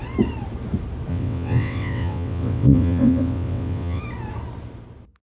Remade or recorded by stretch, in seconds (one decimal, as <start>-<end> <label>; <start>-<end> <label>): 0.0-1.1 recorded; 1.1-4.0 remade; 4.0-5.4 recorded